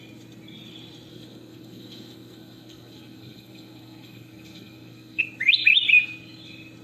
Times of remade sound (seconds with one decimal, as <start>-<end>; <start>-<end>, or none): 1.1-5.2